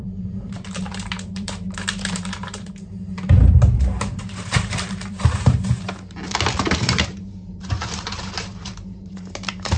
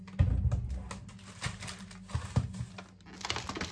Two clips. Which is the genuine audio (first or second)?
second